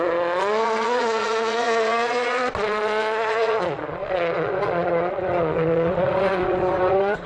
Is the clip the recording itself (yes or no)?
no